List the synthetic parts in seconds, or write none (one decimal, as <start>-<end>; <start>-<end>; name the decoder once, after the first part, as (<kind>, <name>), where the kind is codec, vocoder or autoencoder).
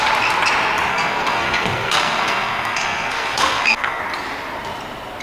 0.9-4.0 (codec, SNAC)